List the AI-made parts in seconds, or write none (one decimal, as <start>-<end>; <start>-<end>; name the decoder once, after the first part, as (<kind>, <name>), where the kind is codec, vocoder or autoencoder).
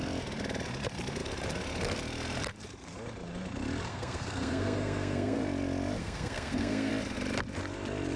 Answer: 3.9-5.4 (codec, SNAC); 6.0-6.9